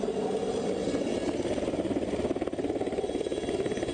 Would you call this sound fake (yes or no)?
no